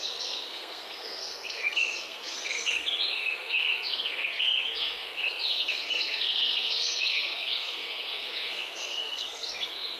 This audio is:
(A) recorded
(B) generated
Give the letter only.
B